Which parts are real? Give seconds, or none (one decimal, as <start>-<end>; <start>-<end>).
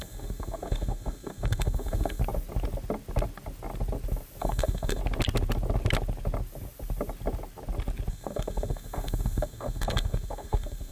2.2-4.4; 5.0-8.1